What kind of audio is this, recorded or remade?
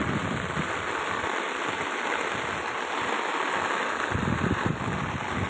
recorded